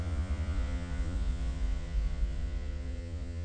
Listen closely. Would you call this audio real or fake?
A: fake